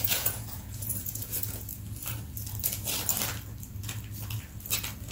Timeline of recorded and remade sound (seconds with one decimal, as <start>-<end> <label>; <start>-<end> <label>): 0.0-1.7 remade; 1.7-5.1 recorded